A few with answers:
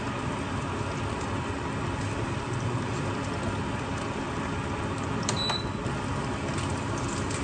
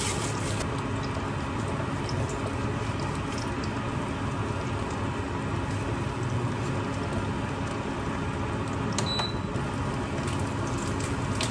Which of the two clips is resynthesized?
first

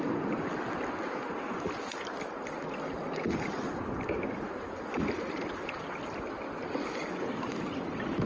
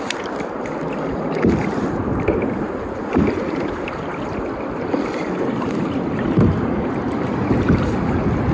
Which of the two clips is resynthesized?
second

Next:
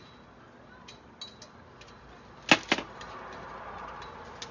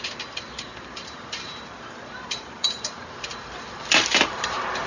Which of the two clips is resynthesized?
second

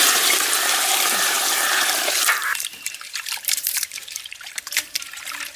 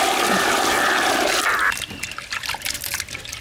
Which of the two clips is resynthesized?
first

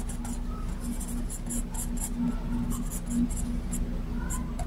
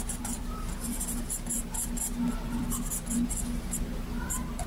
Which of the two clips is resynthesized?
second